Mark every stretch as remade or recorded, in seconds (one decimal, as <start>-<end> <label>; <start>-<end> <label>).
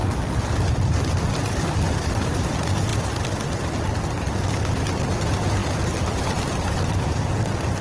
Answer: 0.0-7.8 recorded